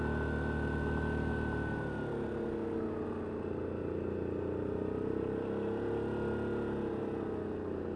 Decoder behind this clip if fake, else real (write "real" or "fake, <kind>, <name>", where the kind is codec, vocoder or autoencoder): real